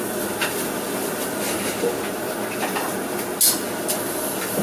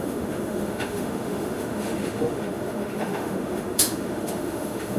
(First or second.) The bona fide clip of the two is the first